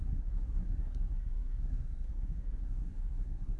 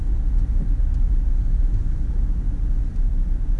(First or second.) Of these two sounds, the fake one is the first